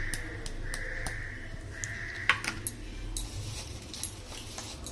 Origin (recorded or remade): recorded